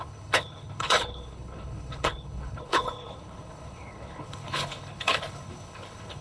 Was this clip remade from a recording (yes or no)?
yes